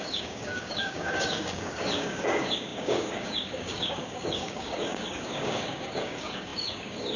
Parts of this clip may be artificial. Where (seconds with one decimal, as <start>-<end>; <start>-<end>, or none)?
0.0-7.2